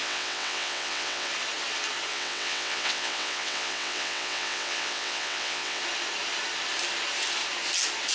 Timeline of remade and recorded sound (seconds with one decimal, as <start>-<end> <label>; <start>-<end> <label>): 0.0-1.3 remade; 1.3-2.1 recorded; 2.1-5.8 remade; 5.8-8.1 recorded